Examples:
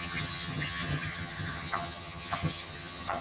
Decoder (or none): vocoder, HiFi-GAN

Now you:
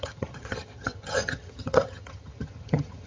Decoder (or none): vocoder, HiFi-GAN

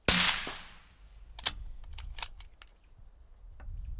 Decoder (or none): none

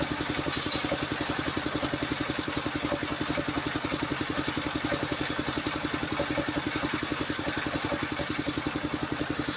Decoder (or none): none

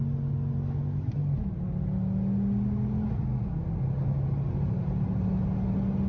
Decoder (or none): none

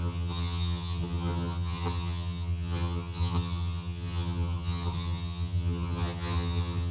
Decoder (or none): vocoder, HiFi-GAN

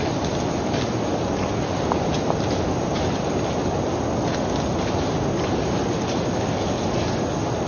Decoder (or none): none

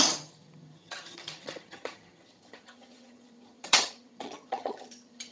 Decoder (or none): vocoder, HiFi-GAN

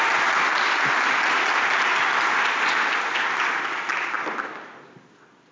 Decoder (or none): none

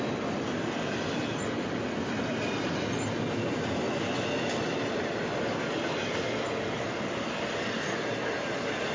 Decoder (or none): none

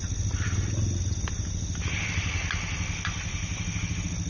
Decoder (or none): none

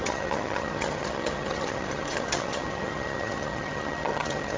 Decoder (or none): vocoder, HiFi-GAN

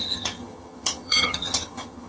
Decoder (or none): vocoder, HiFi-GAN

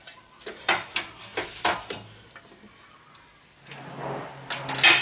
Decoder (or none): none